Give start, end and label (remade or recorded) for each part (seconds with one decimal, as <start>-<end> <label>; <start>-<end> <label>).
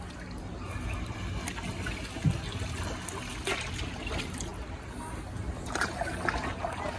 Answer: 0.0-7.0 recorded